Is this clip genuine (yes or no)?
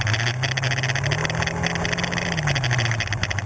yes